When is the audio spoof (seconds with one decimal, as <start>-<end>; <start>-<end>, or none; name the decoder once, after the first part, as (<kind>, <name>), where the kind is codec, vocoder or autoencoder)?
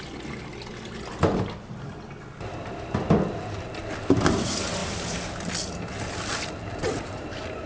0.5-2.1 (vocoder, BigVGAN v2); 4.8-7.7